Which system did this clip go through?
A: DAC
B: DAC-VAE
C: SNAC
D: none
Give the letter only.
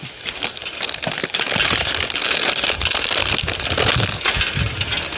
D